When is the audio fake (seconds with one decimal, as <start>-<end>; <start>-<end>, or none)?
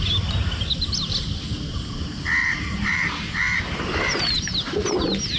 2.4-4.3